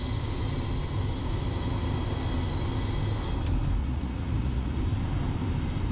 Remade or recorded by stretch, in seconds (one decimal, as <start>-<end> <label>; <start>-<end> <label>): 0.0-3.8 recorded; 3.8-4.8 remade; 4.8-5.9 recorded